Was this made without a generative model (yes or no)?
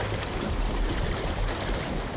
yes